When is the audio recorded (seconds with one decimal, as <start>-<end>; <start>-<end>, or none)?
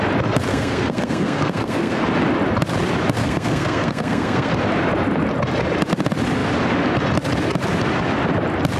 0.0-0.5; 2.0-3.2; 4.5-8.8